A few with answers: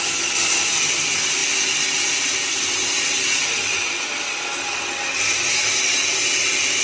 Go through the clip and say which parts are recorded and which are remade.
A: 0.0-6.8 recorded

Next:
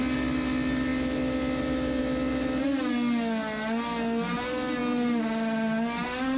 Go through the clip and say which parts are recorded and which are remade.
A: 0.0-6.4 recorded

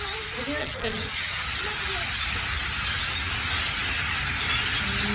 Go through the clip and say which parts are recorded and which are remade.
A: 0.0-0.6 recorded; 0.6-1.4 remade; 1.4-5.1 recorded